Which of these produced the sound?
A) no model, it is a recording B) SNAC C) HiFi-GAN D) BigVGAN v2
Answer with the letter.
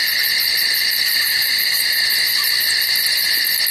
A